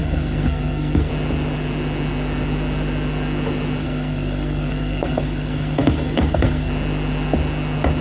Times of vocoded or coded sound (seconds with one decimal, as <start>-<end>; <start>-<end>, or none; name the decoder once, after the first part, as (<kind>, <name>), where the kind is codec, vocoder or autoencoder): 0.0-1.1 (codec, SNAC); 3.8-6.7